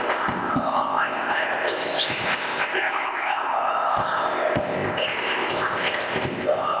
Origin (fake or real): fake